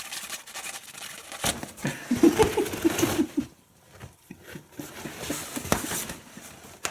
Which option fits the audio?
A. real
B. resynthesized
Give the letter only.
A